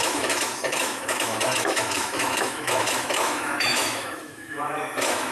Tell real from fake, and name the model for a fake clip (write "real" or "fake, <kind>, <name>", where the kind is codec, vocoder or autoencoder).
fake, autoencoder, DAC-VAE